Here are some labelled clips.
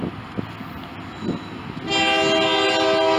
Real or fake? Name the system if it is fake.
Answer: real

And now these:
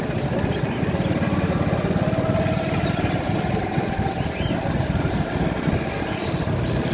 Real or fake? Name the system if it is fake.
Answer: real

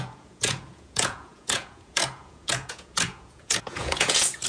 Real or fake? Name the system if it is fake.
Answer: fake, vocoder, Vocos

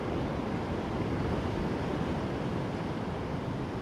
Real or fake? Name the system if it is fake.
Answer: real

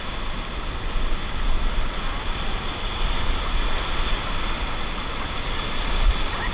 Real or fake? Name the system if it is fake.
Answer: real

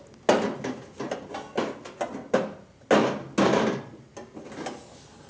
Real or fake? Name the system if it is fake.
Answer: real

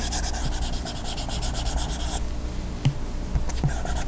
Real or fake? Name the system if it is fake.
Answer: real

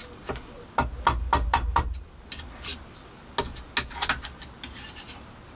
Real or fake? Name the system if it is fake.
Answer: real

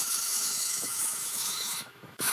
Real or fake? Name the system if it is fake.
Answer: fake, autoencoder, DAC-VAE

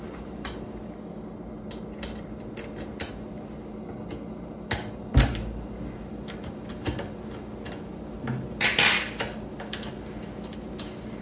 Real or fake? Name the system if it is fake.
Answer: real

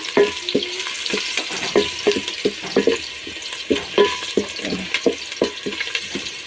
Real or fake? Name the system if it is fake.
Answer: real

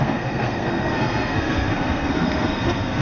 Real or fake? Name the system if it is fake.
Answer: fake, codec, SNAC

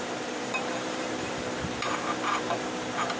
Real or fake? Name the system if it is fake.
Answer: fake, vocoder, BigVGAN v2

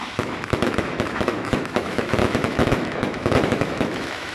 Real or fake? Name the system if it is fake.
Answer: fake, autoencoder, DAC-VAE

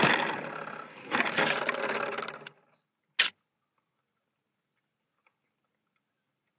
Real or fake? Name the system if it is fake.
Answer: real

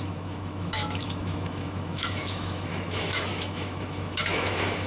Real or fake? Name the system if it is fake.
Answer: fake, autoencoder, DAC-VAE